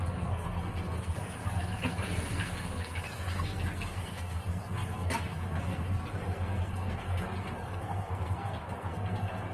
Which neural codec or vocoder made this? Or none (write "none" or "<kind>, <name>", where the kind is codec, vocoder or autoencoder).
codec, SNAC